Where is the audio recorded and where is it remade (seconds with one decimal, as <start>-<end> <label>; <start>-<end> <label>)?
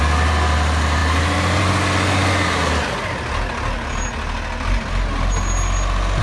0.0-6.2 recorded